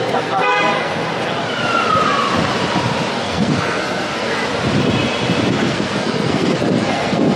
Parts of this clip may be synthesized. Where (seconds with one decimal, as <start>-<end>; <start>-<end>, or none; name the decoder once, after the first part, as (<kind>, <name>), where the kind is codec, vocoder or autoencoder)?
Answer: 0.0-1.0 (codec, SNAC); 3.1-4.4; 5.5-7.4

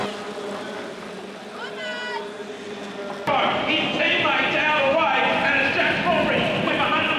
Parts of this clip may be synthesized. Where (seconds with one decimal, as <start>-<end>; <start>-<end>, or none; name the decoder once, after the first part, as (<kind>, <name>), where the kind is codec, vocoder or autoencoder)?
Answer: none

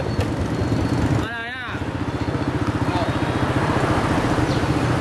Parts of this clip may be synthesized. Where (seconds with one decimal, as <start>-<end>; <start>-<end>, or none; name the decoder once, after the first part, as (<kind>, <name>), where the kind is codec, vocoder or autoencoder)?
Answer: none

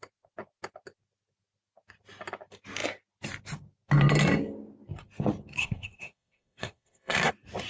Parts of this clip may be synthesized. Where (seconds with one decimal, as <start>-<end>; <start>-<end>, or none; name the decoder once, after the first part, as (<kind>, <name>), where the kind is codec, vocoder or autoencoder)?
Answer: 5.6-7.3 (codec, SNAC)

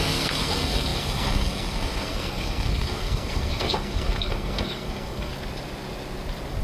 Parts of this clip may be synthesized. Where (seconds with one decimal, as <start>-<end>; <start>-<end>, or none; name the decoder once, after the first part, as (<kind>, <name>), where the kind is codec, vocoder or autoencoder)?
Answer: 0.0-5.3 (codec, SNAC)

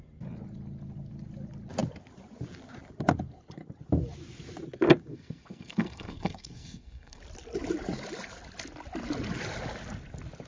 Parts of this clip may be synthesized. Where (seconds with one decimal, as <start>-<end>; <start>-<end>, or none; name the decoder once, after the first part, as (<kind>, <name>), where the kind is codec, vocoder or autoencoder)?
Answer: 5.1-7.2 (codec, SNAC)

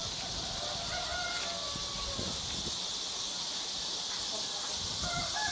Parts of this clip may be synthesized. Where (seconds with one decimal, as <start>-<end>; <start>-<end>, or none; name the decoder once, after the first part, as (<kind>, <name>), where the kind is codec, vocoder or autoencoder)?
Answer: none

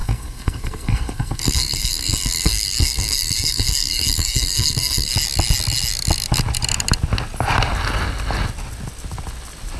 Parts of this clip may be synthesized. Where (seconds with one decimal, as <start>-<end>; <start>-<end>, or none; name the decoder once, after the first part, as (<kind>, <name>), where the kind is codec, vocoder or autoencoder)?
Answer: 0.0-5.1 (codec, SNAC)